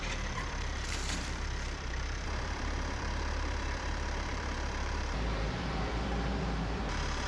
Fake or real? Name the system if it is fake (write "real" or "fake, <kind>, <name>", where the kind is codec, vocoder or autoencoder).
fake, vocoder, BigVGAN v2